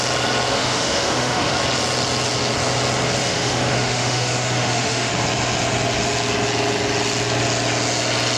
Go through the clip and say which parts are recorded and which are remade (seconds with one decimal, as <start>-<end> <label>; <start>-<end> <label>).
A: 0.0-0.5 recorded; 0.5-1.5 remade; 1.5-3.2 recorded; 3.2-5.1 remade; 5.1-8.4 recorded